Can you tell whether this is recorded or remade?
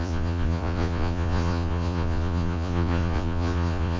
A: remade